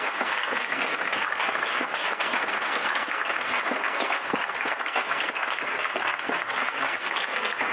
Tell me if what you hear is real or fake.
fake